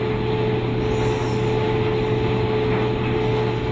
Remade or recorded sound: recorded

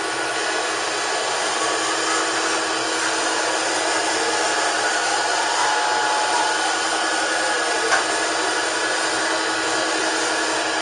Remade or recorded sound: recorded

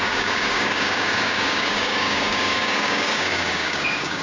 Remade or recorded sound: remade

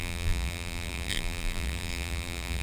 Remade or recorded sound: remade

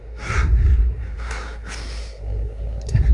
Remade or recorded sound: remade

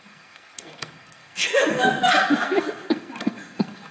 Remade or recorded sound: remade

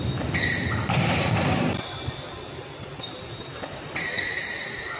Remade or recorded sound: remade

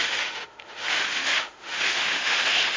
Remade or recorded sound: remade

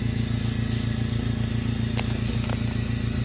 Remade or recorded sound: recorded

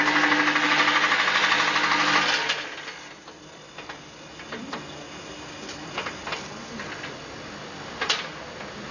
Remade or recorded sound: recorded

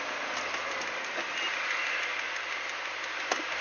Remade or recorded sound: recorded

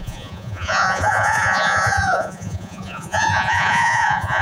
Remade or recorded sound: remade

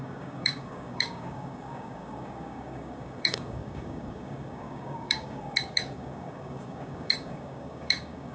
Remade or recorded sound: remade